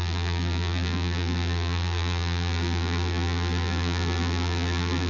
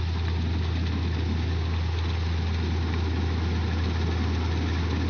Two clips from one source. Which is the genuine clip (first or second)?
second